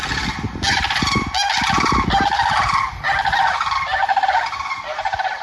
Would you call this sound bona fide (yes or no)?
yes